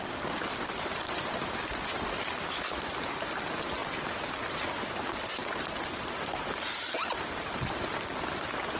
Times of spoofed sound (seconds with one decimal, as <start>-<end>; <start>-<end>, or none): 0.5-2.7; 3.8-4.7; 5.4-6.0

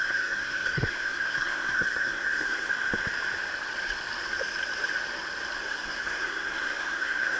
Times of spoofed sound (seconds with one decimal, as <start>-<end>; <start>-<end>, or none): 0.0-2.7; 5.6-7.4

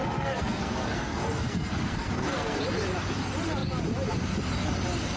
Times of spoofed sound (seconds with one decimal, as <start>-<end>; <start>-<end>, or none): 0.0-2.6

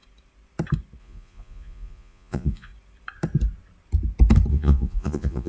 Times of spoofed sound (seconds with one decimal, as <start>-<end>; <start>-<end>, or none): 1.0-2.7; 4.5-5.5

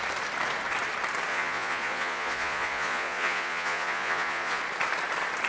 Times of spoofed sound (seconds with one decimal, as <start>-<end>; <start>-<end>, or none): 1.3-4.6

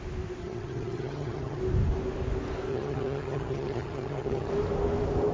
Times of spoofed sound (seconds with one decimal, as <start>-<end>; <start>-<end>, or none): 0.4-1.6; 2.7-4.5

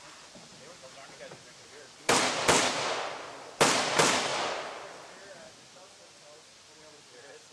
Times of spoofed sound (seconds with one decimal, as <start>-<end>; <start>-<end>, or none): none

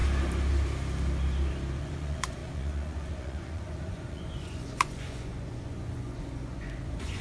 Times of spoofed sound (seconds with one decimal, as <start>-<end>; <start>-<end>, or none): 1.8-7.2